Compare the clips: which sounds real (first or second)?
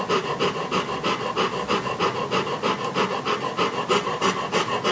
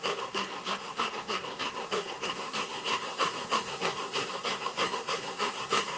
first